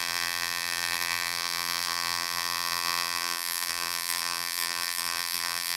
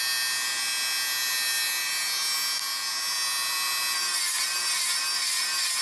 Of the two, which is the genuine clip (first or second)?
second